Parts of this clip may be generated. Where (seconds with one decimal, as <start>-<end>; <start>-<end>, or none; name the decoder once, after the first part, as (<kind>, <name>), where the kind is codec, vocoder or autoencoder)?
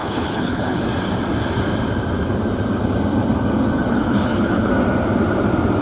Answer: 0.0-0.8 (codec, HILCodec); 3.9-4.7